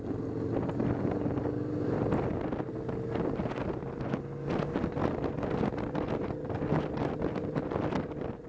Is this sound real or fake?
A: real